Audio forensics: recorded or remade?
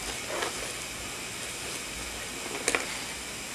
recorded